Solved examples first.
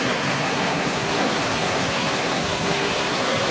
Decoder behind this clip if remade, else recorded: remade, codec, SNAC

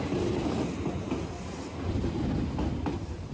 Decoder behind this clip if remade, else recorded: recorded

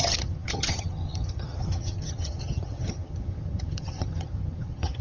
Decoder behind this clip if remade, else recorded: remade, vocoder, HiFi-GAN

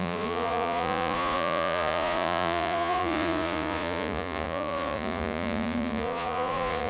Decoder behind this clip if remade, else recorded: remade, vocoder, Vocos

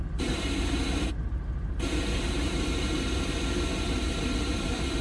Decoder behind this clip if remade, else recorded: remade, vocoder, BigVGAN v2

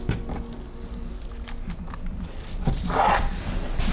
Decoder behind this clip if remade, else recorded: recorded